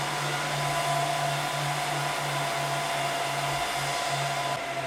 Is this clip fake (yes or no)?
no